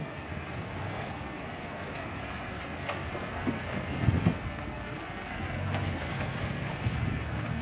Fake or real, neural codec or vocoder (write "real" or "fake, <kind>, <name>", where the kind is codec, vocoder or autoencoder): fake, codec, SNAC